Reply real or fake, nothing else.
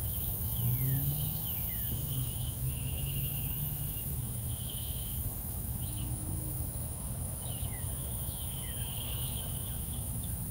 fake